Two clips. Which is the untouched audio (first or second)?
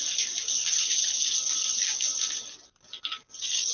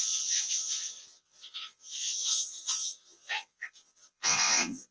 first